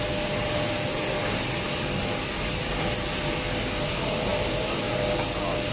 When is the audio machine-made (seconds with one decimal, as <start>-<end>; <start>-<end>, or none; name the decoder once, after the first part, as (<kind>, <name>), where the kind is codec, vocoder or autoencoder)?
none